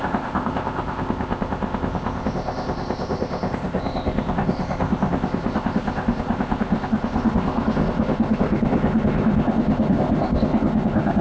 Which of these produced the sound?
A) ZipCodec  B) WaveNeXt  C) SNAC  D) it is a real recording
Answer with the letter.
A